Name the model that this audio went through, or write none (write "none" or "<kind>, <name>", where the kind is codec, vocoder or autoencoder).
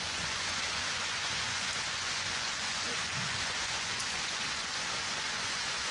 vocoder, Vocos